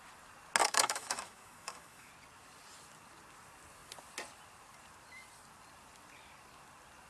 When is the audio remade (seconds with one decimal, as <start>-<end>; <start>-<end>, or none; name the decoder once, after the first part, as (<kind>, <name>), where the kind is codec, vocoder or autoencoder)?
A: 0.6-2.1 (autoencoder, DAC-VAE)